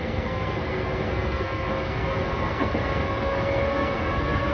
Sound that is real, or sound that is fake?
fake